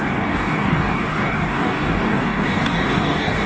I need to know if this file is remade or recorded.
remade